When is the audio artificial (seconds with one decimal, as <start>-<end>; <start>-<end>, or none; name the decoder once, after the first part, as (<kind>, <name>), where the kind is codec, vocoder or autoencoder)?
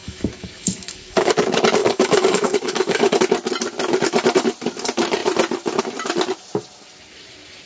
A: 0.0-1.3 (codec, DAC); 1.8-3.2